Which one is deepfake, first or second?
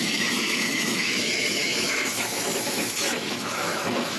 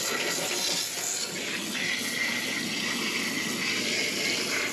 first